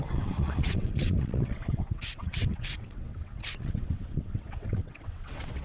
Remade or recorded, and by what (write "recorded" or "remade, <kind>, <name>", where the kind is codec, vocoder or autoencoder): remade, vocoder, WaveNeXt